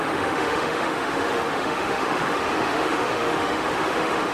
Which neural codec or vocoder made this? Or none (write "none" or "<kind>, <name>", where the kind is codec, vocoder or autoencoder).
autoencoder, DAC-VAE